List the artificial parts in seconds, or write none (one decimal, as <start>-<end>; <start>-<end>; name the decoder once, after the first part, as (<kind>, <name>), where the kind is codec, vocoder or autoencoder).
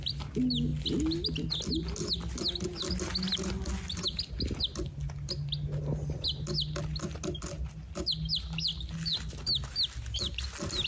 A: none